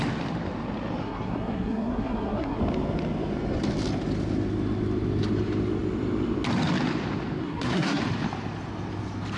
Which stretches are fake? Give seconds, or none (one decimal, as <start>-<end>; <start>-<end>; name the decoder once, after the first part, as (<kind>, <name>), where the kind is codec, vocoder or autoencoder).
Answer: 1.0-2.6 (codec, SNAC); 7.4-8.0